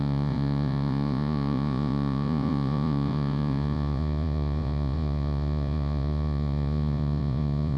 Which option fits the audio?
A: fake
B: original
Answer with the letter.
A